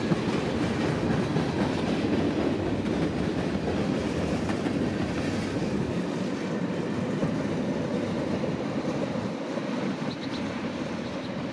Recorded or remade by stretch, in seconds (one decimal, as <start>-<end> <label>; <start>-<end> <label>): 0.0-7.2 recorded; 7.2-9.6 remade; 9.6-11.5 recorded